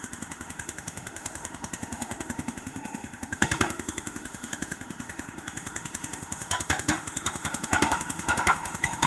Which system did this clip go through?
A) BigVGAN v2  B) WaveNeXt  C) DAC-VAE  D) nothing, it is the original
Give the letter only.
C